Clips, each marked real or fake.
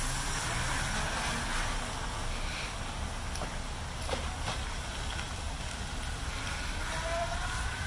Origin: real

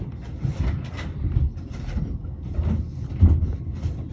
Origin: real